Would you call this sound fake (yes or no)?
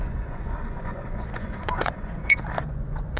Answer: yes